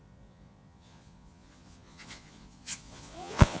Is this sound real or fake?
fake